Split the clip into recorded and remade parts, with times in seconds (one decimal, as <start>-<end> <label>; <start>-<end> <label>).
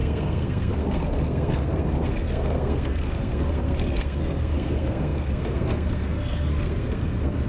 0.0-7.5 remade